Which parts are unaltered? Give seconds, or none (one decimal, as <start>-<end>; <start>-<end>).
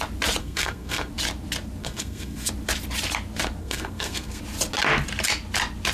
0.0-0.4; 1.1-1.8; 2.5-3.6; 4.4-5.9